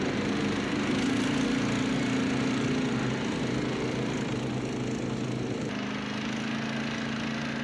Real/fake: real